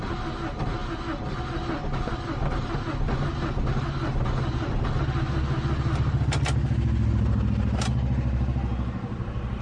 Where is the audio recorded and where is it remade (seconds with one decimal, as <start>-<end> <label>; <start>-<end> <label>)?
0.0-9.6 recorded